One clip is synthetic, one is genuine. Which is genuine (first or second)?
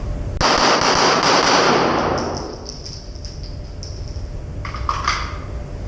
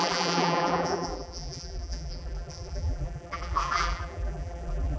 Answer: first